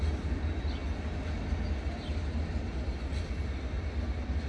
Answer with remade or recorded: recorded